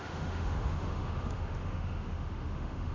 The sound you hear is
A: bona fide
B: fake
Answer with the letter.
B